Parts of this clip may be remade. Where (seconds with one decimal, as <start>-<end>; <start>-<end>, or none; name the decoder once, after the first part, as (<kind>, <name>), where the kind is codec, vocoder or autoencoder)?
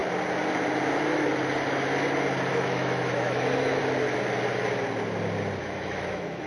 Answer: 2.5-3.8 (autoencoder, DAC-VAE); 5.6-6.5